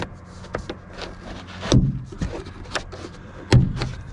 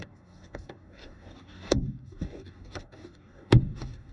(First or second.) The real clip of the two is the first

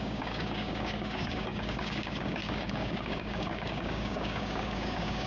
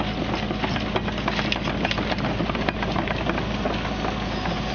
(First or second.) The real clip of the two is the second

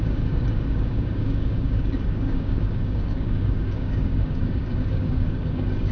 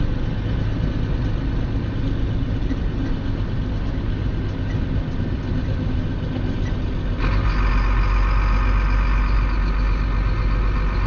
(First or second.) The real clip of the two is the second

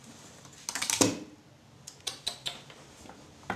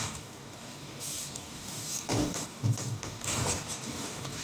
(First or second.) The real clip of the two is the first